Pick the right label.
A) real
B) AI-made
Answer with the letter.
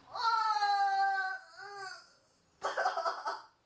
A